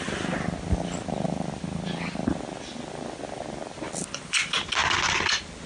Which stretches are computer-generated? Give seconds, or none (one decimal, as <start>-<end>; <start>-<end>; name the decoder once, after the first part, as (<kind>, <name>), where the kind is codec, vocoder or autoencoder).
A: none

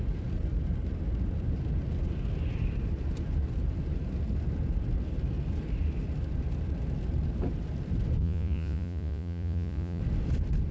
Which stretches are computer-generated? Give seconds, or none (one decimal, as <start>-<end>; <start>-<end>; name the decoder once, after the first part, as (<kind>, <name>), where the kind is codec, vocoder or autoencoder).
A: 8.2-10.0 (vocoder, Vocos)

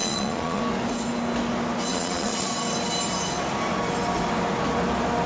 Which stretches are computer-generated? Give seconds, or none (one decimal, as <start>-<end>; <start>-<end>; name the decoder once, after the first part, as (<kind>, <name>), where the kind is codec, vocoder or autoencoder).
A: 0.0-0.6 (vocoder, Vocos); 1.9-2.5